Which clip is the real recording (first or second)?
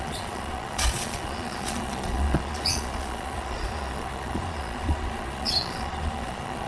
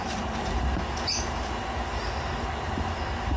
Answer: second